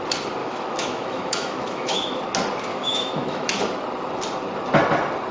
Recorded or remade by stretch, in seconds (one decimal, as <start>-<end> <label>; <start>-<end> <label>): 0.0-0.4 recorded; 0.4-2.2 remade; 2.2-2.7 recorded; 2.7-3.6 remade; 3.6-5.3 recorded